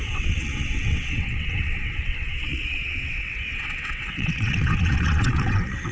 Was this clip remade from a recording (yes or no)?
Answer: yes